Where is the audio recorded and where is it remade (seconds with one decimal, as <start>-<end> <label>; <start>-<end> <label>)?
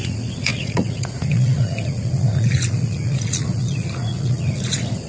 0.0-5.1 remade